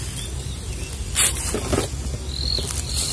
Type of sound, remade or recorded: recorded